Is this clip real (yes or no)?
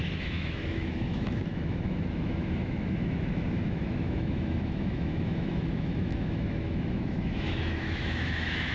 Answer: no